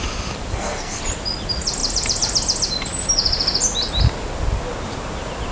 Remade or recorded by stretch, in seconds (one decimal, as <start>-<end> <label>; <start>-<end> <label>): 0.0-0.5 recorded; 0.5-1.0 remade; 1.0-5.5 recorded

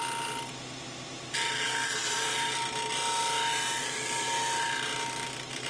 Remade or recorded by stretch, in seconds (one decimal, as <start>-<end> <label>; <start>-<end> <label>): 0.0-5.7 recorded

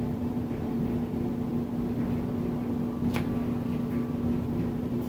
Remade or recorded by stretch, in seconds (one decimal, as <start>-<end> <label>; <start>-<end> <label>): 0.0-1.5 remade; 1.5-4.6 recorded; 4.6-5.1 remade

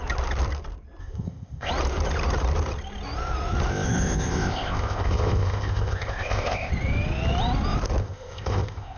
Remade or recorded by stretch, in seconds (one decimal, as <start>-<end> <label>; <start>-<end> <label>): 0.0-1.0 recorded; 1.0-1.7 remade; 1.7-3.7 recorded; 3.7-6.7 remade; 6.7-8.0 recorded; 8.0-9.0 remade

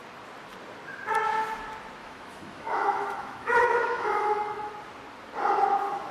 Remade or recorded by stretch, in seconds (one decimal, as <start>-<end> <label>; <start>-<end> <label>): 0.0-2.0 recorded; 2.0-4.7 remade; 4.7-6.1 recorded

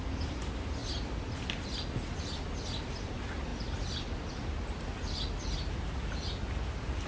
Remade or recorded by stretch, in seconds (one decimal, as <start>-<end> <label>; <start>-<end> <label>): 0.0-7.1 recorded